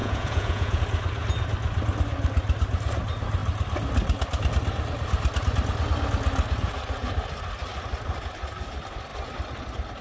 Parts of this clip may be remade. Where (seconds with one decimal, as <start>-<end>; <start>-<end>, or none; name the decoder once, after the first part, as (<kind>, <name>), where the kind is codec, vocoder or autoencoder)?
0.0-0.8 (vocoder, Vocos)

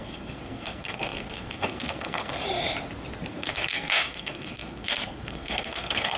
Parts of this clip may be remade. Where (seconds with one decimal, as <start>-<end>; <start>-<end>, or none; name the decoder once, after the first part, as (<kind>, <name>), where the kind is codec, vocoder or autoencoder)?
0.0-2.3 (codec, SNAC); 3.3-6.2

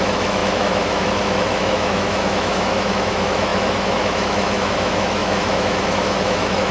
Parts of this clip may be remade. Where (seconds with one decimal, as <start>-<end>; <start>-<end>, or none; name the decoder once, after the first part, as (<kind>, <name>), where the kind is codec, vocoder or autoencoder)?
0.0-6.7 (autoencoder, DAC-VAE)

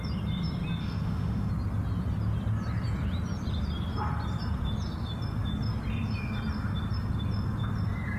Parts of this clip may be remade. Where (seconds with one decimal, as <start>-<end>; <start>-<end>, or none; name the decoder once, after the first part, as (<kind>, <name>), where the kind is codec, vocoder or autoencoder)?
0.8-1.5 (autoencoder, DAC-VAE)

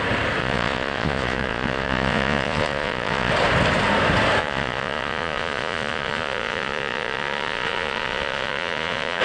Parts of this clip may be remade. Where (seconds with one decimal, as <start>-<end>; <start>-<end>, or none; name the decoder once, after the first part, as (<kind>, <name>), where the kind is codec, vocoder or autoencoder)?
0.4-3.3 (vocoder, Vocos); 4.4-9.2

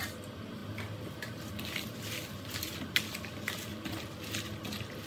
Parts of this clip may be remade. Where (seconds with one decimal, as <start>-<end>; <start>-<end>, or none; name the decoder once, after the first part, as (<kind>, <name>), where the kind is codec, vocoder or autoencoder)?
none